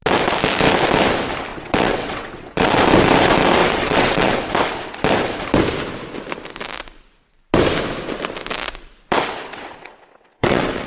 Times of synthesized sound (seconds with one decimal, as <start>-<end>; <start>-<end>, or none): 1.5-2.8; 3.6-4.4; 9.5-10.9